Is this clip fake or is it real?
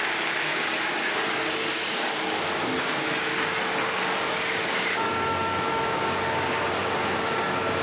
fake